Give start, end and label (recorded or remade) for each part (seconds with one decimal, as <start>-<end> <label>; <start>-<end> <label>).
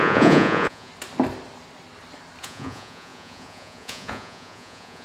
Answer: 0.0-0.9 remade; 0.9-2.4 recorded; 2.4-5.0 remade